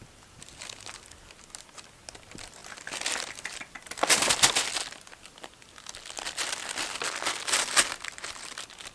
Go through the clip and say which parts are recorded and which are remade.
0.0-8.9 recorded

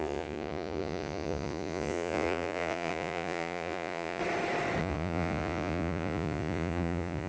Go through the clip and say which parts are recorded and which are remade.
0.0-4.2 remade; 4.2-4.8 recorded; 4.8-7.3 remade

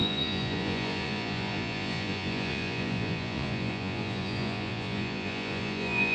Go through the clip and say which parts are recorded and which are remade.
0.0-6.1 remade

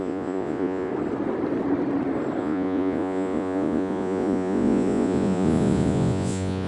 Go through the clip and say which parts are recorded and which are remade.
0.0-0.9 remade; 0.9-2.4 recorded; 2.4-6.7 remade

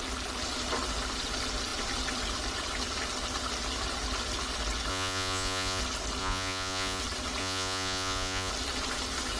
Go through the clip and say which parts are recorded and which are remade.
0.0-4.9 recorded; 4.9-5.8 remade; 5.8-6.2 recorded; 6.2-7.0 remade; 7.0-7.4 recorded; 7.4-8.5 remade; 8.5-9.4 recorded